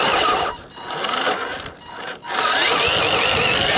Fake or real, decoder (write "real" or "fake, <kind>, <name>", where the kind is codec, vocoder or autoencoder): real